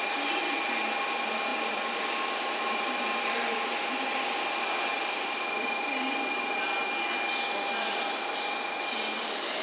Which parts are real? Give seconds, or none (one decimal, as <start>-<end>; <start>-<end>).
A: 0.0-9.6